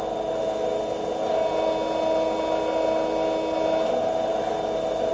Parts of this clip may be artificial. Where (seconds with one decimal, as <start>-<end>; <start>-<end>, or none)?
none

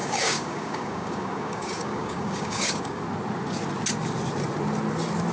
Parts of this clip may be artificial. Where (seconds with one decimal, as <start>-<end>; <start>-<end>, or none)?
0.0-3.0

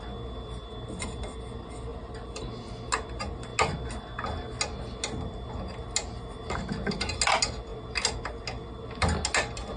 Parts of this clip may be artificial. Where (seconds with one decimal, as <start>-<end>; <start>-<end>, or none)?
1.9-2.4